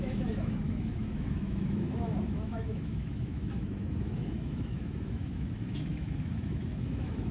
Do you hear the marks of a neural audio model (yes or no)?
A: yes